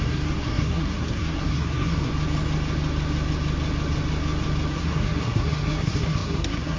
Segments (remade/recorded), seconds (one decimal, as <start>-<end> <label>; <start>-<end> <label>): 0.0-2.1 remade; 2.1-4.7 recorded; 4.7-6.8 remade